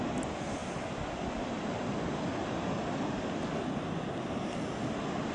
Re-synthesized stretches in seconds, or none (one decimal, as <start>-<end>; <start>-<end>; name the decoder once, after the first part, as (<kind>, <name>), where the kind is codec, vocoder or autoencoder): none